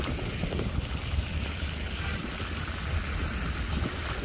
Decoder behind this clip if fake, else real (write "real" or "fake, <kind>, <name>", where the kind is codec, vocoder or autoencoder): real